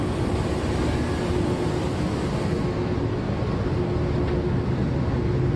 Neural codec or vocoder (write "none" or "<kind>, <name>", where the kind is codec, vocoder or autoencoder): none